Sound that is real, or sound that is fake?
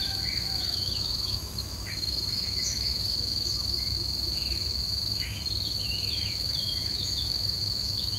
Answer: fake